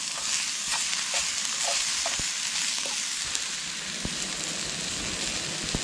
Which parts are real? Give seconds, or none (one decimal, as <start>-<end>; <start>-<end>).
0.0-5.8